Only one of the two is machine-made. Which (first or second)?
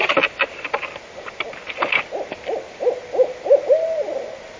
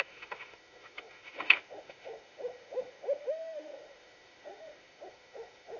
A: second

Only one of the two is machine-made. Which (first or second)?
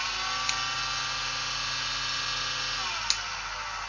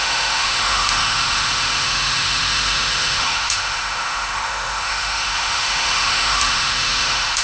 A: second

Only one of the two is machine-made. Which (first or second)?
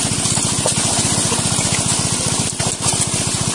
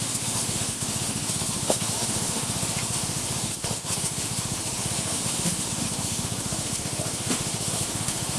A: second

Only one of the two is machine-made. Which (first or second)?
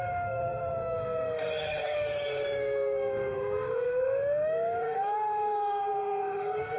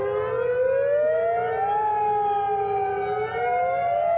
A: first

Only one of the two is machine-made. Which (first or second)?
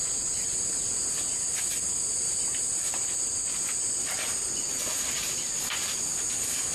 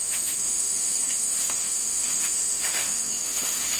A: second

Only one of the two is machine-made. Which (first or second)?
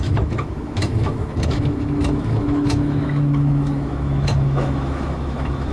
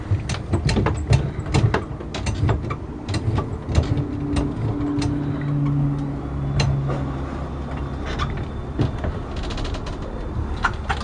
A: first